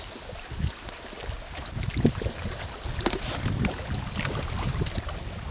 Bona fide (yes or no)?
yes